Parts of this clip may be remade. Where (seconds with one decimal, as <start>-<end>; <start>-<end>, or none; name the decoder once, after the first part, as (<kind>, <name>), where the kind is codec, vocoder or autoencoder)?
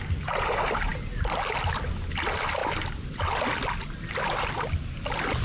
none